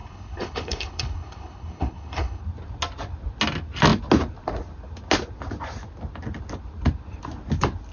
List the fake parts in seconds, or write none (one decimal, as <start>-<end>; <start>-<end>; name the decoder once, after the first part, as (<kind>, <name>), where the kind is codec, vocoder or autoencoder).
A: 0.0-2.4 (codec, HILCodec)